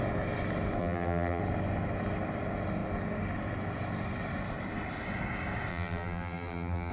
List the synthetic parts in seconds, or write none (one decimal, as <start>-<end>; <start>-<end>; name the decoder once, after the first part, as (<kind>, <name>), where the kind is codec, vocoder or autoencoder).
0.8-1.4 (vocoder, BigVGAN v2); 5.7-6.9

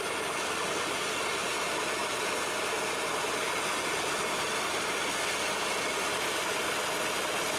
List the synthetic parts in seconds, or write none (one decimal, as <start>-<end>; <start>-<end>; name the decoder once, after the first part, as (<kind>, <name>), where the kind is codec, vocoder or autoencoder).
2.0-3.3 (vocoder, BigVGAN v2)

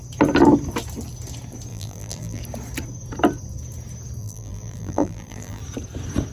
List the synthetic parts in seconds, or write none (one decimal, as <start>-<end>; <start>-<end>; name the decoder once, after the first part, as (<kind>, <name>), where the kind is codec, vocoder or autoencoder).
1.7-2.4 (vocoder, BigVGAN v2); 4.2-5.6

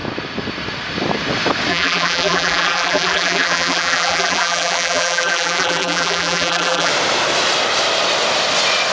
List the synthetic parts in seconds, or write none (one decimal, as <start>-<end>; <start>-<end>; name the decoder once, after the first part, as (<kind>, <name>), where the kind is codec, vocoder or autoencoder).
1.7-6.9 (vocoder, BigVGAN v2)

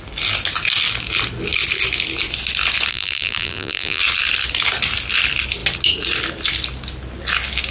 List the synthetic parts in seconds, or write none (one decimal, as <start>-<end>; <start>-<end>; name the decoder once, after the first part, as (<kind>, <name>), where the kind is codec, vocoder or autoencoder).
2.9-4.0 (vocoder, BigVGAN v2)

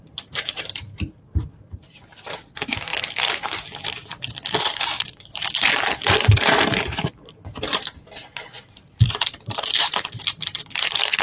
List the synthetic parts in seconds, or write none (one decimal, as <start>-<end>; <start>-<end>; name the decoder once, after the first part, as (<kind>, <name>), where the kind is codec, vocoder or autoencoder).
0.0-2.9 (vocoder, BigVGAN v2); 4.6-11.2

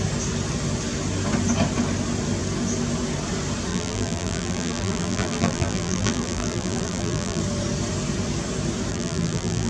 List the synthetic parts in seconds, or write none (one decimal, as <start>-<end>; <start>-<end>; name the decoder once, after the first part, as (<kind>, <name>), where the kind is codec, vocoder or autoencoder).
3.7-7.4 (vocoder, BigVGAN v2); 8.9-9.7